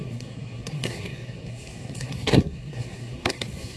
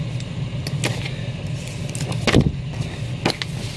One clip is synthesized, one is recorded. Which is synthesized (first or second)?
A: first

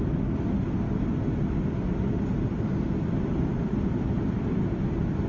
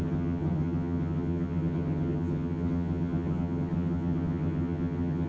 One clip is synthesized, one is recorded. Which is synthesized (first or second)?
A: second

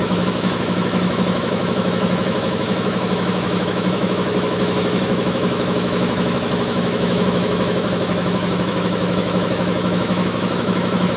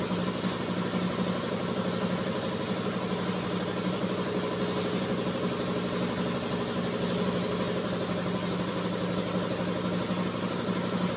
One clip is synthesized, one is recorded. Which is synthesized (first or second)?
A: first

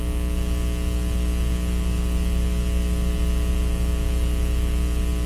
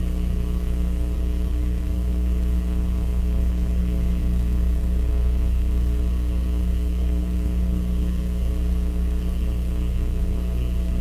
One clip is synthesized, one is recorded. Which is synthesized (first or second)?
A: second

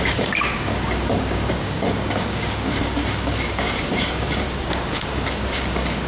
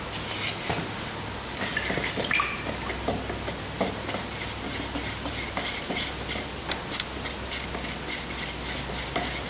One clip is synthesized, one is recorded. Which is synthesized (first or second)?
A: first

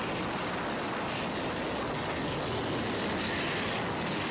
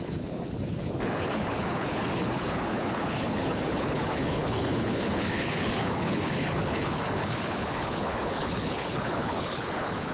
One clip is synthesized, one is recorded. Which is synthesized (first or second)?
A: second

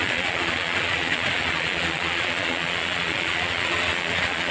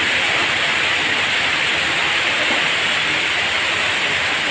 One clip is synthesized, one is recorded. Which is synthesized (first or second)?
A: first